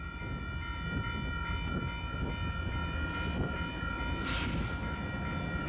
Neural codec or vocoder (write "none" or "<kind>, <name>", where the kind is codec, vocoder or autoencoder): none